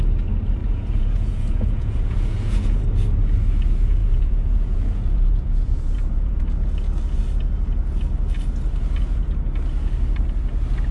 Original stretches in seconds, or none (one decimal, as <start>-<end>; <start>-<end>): 0.0-0.6; 2.8-4.0; 6.4-10.9